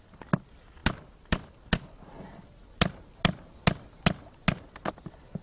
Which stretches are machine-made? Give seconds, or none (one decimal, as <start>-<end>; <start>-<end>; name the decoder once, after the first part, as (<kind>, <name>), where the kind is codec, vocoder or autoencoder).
none